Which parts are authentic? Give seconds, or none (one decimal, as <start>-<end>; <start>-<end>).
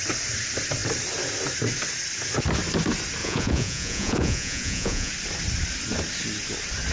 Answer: 0.0-3.2; 5.1-6.9